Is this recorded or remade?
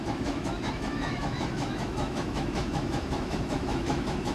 remade